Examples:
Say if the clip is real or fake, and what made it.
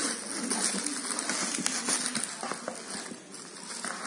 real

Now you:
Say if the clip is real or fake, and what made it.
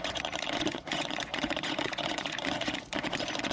fake, vocoder, Vocos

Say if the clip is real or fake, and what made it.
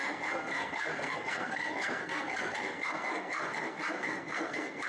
fake, codec, SNAC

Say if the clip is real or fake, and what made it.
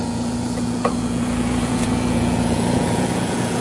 fake, vocoder, Vocos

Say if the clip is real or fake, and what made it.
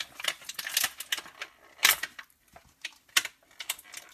real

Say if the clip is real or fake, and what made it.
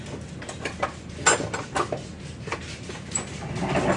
real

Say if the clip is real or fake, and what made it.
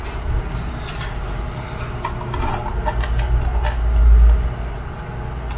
real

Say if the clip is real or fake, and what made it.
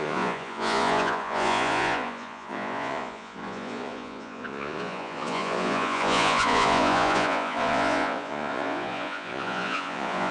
fake, vocoder, Vocos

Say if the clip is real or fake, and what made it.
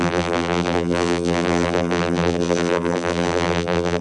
fake, vocoder, BigVGAN v2